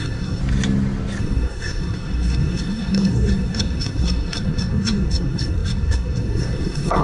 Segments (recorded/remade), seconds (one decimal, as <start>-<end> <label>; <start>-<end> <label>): 0.0-0.4 remade; 0.4-1.2 recorded; 1.2-7.0 remade